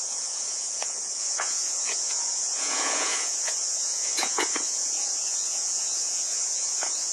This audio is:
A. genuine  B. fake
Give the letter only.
B